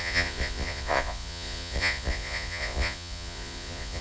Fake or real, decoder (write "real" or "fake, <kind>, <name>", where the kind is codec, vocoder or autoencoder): fake, vocoder, Vocos